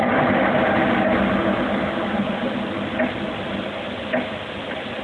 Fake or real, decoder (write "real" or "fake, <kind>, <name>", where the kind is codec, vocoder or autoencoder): real